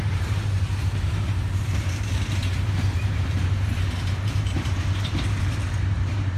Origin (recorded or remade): remade